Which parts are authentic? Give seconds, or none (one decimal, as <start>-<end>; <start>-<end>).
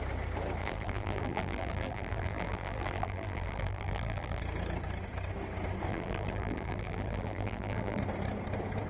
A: 0.0-0.6; 4.4-5.9; 8.0-8.9